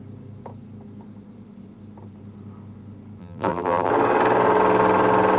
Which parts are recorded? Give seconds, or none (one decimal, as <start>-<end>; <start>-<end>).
0.0-3.2; 3.9-5.4